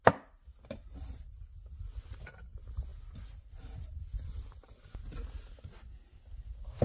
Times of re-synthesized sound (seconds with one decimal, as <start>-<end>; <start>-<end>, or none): none